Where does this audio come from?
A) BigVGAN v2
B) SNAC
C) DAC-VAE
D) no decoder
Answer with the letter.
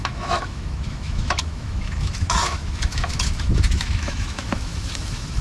C